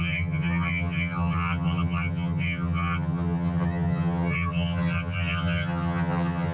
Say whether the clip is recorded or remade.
remade